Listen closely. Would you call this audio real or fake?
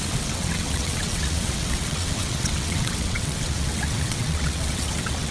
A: fake